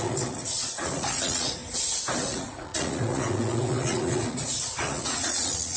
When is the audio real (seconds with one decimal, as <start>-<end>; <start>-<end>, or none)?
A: 1.6-2.2

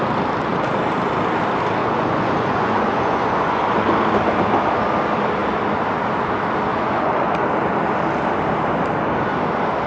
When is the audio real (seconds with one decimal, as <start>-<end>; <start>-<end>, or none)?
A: 0.0-1.8; 3.6-6.7; 7.3-9.9

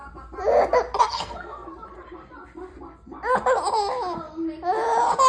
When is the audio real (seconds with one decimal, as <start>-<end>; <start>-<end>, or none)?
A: 0.0-1.0; 1.7-5.3

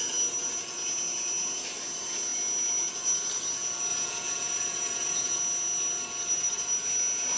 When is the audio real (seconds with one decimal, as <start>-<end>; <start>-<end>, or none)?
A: 0.0-3.9; 5.4-7.4

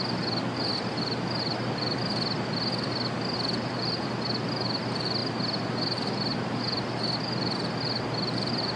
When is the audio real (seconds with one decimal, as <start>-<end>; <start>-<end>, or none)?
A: 0.0-8.8

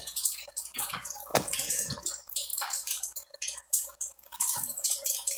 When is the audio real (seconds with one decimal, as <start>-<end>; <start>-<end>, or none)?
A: none

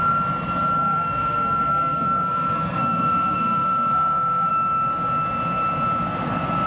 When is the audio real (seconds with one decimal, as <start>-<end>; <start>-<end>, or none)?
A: 0.0-0.8; 4.5-6.7

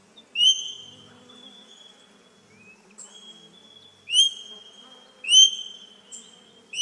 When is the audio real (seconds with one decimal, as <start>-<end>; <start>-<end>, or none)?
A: 0.0-6.8